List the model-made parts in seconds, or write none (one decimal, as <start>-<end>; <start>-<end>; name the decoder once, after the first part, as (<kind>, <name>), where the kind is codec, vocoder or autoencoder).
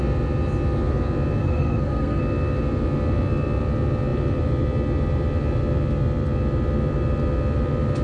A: 1.4-2.2 (codec, SNAC)